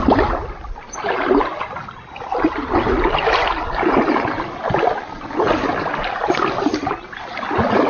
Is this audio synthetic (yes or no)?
no